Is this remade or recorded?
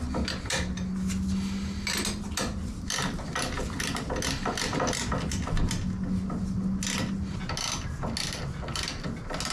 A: recorded